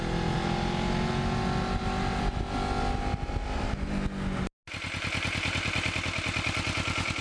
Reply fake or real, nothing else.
real